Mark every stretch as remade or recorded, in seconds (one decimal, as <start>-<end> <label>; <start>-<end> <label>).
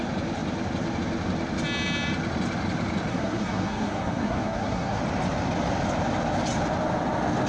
0.0-3.1 recorded; 3.1-5.0 remade; 5.0-7.5 recorded